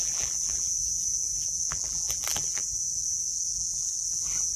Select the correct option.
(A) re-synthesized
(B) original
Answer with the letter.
A